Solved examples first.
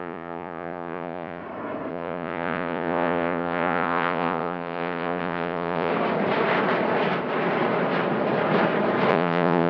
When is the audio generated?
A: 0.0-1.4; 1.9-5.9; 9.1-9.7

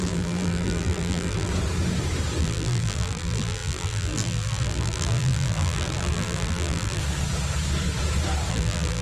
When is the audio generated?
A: 0.0-1.5; 2.4-7.0; 8.5-9.0

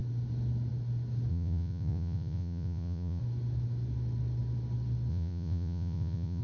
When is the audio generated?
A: 1.3-3.2; 5.1-6.4

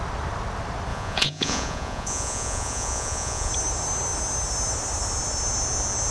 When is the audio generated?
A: 0.9-3.5